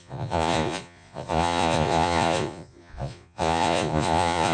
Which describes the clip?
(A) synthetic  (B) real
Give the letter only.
A